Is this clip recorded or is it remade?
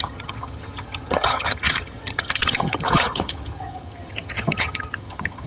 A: remade